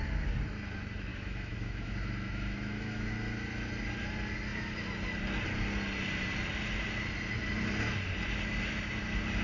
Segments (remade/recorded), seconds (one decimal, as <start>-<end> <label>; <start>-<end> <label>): 0.0-1.1 recorded; 1.1-3.1 remade; 3.1-9.4 recorded